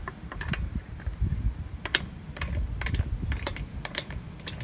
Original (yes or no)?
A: yes